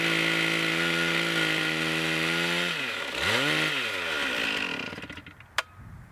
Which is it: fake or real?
real